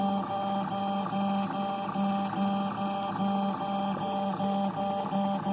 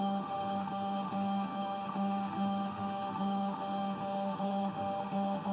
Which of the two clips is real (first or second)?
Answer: first